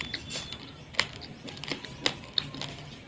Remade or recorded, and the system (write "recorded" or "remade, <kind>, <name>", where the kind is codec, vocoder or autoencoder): recorded